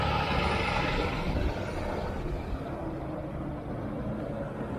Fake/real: real